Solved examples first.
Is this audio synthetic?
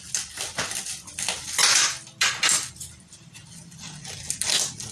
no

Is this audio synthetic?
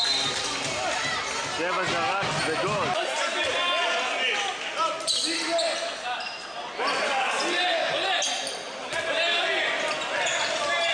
no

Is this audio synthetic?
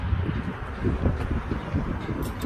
no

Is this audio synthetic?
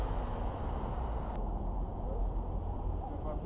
no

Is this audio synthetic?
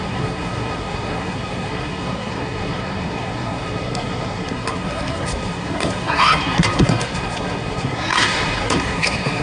yes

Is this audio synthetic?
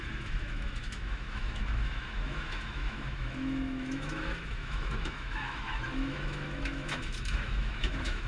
yes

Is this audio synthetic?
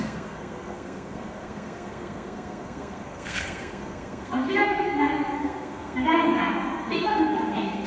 yes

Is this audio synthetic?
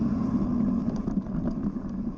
no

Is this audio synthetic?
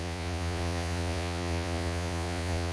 yes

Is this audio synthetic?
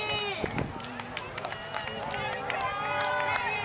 no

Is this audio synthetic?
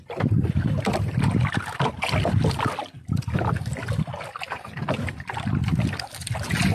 no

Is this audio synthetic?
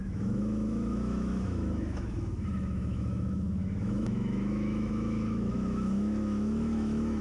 yes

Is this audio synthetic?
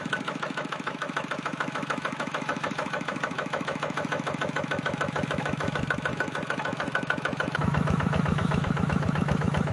yes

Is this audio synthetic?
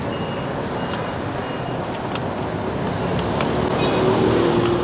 no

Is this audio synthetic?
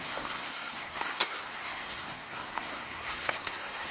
yes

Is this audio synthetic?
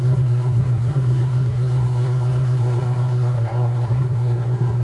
yes